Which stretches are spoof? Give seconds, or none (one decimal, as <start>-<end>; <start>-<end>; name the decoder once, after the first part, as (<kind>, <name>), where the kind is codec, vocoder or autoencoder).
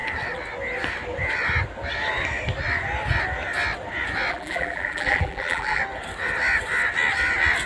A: 4.3-5.8 (vocoder, BigVGAN v2)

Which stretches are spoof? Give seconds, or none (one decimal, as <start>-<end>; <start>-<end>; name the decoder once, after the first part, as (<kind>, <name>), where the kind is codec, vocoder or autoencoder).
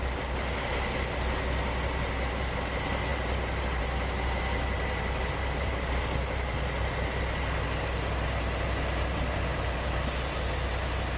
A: none